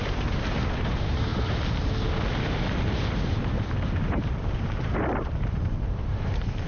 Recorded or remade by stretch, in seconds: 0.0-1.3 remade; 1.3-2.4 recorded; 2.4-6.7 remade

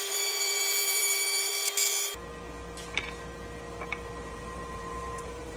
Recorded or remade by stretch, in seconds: 0.0-1.5 remade; 1.5-4.2 recorded; 4.2-5.6 remade

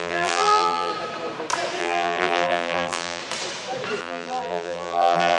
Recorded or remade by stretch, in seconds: 0.0-0.9 remade; 0.9-1.8 recorded; 1.8-3.2 remade; 3.2-4.0 recorded; 4.0-5.4 remade